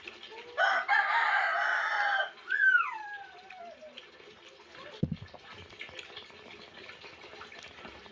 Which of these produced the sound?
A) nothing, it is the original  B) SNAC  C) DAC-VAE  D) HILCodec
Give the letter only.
A